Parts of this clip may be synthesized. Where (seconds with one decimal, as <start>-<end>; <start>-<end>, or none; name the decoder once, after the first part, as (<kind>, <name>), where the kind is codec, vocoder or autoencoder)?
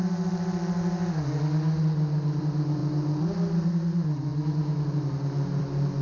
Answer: none